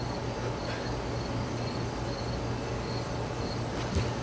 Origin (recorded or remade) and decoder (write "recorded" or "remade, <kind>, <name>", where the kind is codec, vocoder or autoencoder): recorded